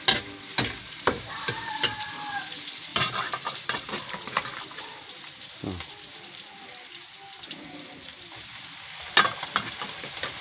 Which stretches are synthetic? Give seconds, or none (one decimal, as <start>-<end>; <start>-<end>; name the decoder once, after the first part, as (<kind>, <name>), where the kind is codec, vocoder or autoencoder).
0.8-2.1 (vocoder, BigVGAN v2); 2.9-3.9